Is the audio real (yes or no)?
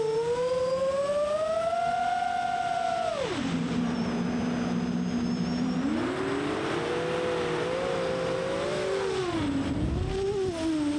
yes